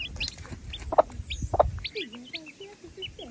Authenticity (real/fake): real